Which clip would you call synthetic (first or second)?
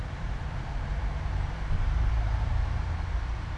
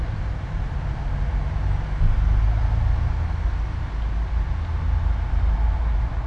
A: first